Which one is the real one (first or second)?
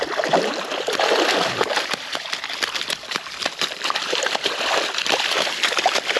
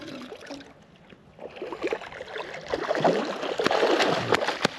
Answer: second